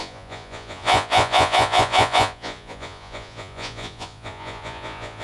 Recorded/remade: remade